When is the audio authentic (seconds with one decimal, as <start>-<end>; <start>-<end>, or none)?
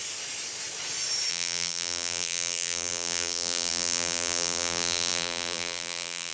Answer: 0.0-1.3